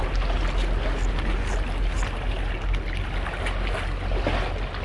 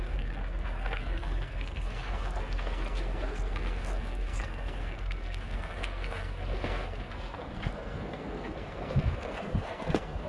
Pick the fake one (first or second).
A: second